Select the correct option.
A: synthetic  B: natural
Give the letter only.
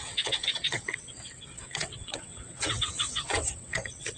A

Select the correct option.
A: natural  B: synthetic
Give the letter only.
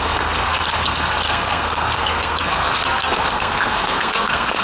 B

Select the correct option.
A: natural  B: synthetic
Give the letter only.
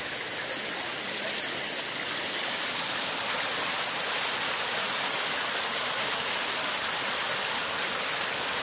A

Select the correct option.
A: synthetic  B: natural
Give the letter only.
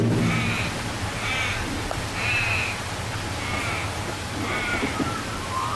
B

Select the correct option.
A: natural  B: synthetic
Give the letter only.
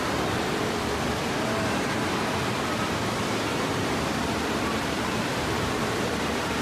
A